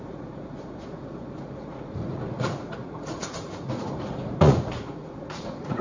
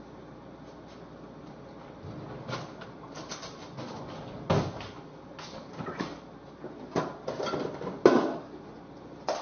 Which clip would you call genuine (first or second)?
second